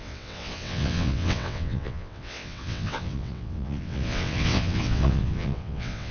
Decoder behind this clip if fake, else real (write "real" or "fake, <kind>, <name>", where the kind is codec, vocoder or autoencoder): fake, vocoder, WaveNeXt